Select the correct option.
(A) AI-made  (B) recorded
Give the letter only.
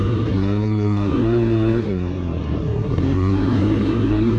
A